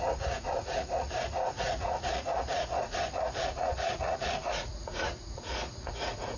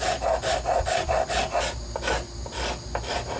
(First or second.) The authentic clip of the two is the second